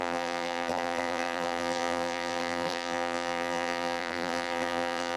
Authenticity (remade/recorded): remade